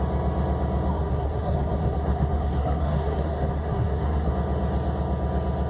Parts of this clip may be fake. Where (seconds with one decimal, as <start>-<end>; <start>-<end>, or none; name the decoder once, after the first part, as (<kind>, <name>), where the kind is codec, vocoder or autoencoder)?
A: 0.9-4.3 (codec, SNAC)